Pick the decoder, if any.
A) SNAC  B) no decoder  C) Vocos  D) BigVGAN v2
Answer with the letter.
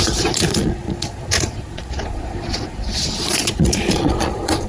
C